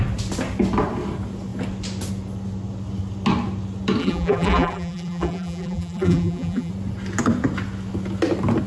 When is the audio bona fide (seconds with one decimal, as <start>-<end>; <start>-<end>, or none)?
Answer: 0.0-4.0; 6.7-8.7